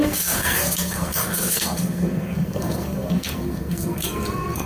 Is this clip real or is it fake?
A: fake